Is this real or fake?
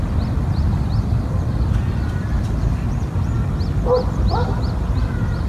real